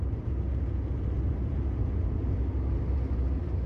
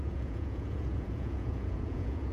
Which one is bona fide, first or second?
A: first